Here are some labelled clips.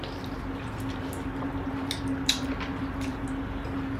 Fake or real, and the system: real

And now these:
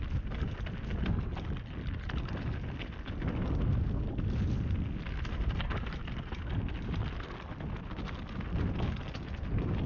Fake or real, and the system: real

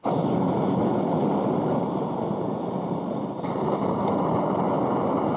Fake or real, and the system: real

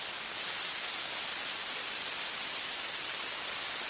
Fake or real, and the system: real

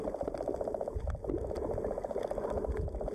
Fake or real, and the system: real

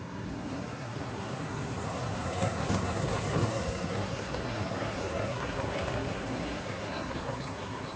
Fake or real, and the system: fake, codec, SNAC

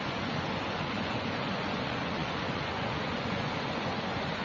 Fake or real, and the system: fake, vocoder, Vocos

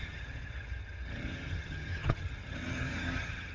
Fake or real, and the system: fake, vocoder, HiFi-GAN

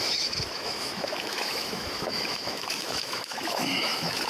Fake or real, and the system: fake, autoencoder, DAC-VAE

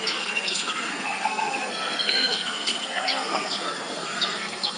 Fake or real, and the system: fake, codec, SNAC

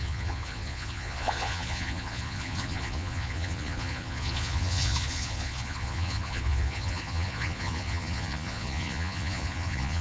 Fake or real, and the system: fake, vocoder, Vocos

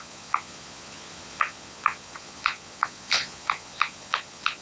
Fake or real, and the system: fake, vocoder, Vocos